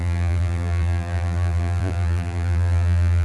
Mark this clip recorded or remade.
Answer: remade